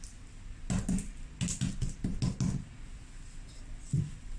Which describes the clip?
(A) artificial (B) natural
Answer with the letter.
B